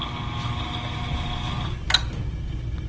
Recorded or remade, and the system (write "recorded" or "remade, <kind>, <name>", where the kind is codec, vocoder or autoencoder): recorded